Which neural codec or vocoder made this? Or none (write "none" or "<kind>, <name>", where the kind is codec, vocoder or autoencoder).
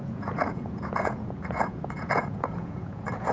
vocoder, Vocos